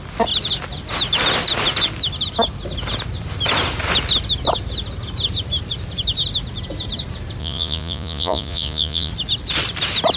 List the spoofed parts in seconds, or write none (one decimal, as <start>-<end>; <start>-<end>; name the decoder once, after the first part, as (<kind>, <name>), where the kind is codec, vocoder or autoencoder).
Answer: 7.4-9.1 (vocoder, Vocos)